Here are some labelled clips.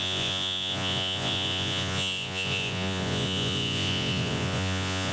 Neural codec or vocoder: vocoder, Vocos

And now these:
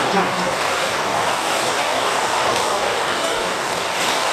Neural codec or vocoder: codec, DAC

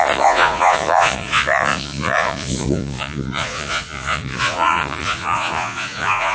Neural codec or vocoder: vocoder, Vocos